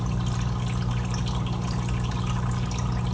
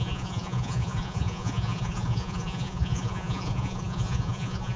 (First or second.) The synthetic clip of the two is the second